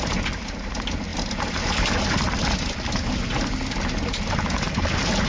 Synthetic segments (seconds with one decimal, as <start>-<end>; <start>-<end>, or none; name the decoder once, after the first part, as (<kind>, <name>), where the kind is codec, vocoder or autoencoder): none